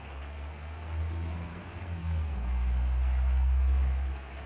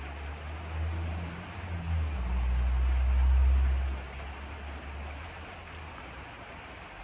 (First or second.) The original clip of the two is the second